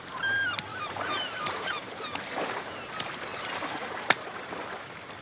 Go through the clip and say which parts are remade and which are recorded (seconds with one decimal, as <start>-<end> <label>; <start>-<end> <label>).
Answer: 0.0-0.7 recorded; 0.7-2.8 remade; 2.8-3.3 recorded; 3.3-4.5 remade; 4.5-5.2 recorded